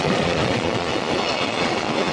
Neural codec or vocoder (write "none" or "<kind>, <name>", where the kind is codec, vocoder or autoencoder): vocoder, Vocos